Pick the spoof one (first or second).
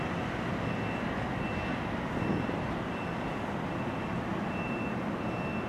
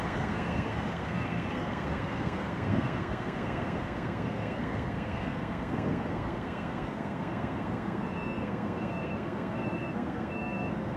second